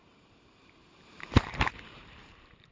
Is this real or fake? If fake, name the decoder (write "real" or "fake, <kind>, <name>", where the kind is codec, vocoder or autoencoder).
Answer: fake, vocoder, BigVGAN v2